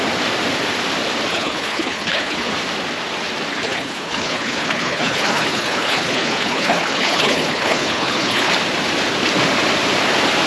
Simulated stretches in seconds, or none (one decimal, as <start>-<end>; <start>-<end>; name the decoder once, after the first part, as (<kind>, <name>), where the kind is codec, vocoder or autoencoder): 1.3-2.5 (codec, HILCodec); 3.5-8.5